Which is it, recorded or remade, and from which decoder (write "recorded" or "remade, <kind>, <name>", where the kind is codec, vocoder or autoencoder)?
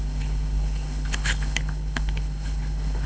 remade, codec, HILCodec